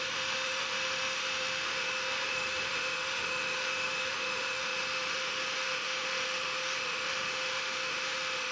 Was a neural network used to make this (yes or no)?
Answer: yes